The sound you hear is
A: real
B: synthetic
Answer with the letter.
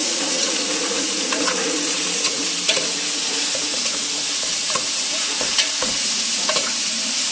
B